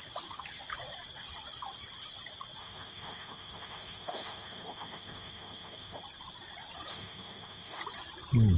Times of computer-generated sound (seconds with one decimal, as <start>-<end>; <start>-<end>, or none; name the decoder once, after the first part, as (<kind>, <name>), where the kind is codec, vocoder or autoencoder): 2.6-6.0 (autoencoder, DAC-VAE); 6.9-7.8